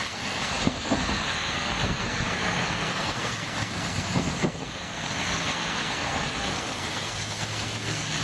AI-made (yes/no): yes